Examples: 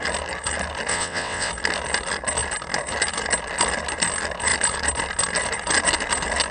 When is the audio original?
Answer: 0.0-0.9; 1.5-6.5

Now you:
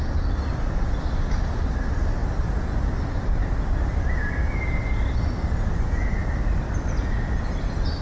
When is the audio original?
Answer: 0.0-8.0